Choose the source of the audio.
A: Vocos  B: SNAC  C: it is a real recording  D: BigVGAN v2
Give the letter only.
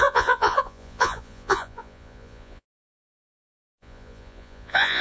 A